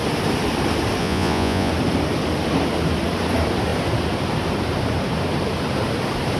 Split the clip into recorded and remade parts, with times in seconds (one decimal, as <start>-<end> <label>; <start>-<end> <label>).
0.0-1.0 recorded; 1.0-1.7 remade; 1.7-6.4 recorded